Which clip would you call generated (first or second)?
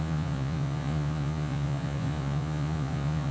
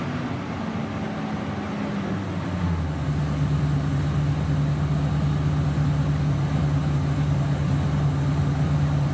first